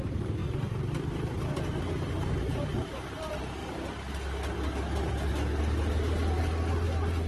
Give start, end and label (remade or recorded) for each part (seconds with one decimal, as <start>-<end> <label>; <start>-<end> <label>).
0.0-7.3 recorded